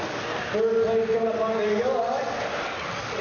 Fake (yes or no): no